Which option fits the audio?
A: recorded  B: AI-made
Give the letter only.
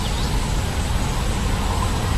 A